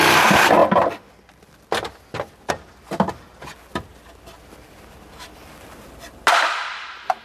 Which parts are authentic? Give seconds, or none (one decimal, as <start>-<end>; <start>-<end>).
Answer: 0.0-7.2